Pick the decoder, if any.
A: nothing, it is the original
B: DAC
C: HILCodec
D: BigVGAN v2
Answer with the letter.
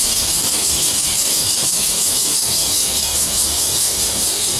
B